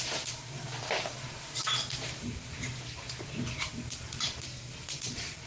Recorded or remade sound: remade